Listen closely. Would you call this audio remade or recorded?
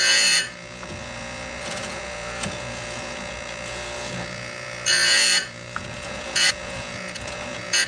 remade